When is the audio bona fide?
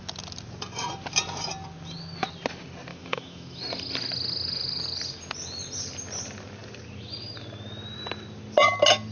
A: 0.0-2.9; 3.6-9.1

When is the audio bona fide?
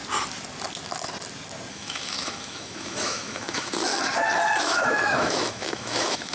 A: 0.0-1.7; 3.9-4.6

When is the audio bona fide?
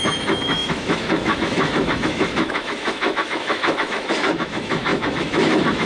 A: none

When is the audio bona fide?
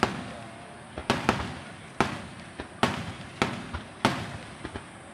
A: 0.0-5.1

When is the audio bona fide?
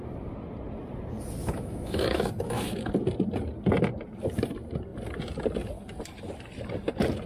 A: 0.0-1.4; 2.9-7.3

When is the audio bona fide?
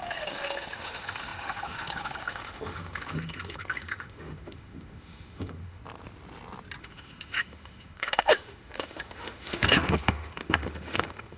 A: 5.8-6.8